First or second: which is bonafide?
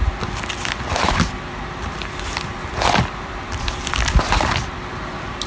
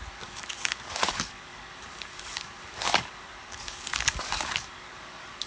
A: first